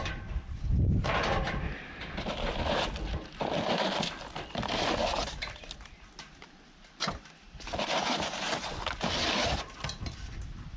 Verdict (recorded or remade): recorded